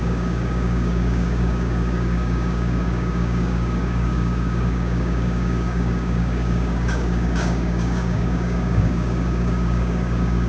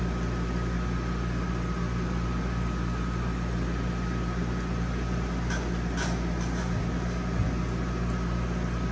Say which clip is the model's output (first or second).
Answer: first